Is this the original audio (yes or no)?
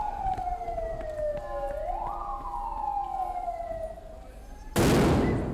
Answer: yes